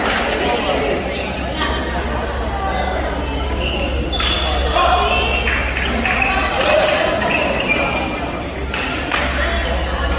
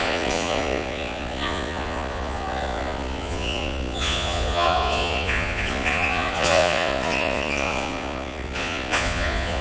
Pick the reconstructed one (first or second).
second